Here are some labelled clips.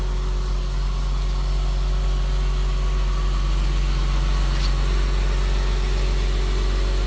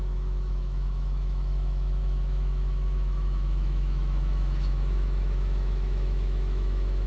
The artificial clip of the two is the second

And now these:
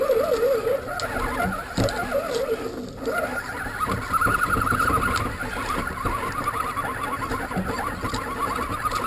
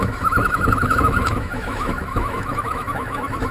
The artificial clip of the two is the second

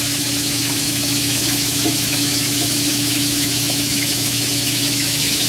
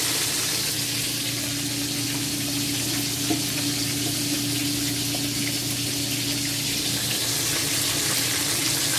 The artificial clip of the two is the first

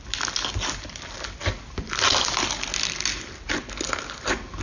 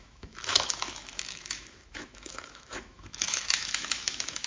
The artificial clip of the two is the second